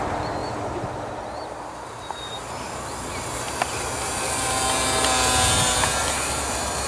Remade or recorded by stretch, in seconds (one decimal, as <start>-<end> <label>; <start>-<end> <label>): 0.0-0.4 recorded; 0.4-4.5 remade; 4.5-6.0 recorded; 6.0-6.9 remade